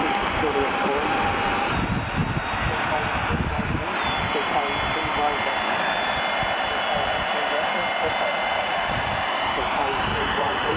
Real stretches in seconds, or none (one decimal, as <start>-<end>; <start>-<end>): 0.0-8.6; 9.2-10.1